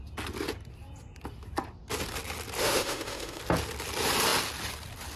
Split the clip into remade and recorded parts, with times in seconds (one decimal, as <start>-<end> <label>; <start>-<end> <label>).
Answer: 0.0-2.6 recorded; 2.6-3.4 remade; 3.4-5.2 recorded